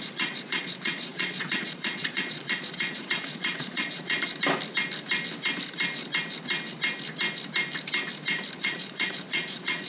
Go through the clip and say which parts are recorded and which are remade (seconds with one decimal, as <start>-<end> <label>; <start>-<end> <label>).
0.0-4.3 remade; 4.3-8.6 recorded; 8.6-9.9 remade